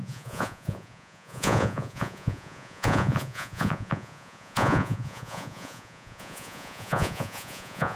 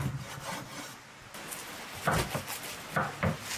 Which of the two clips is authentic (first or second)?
second